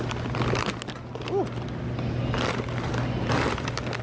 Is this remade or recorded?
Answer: recorded